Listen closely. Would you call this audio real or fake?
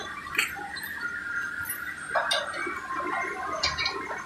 real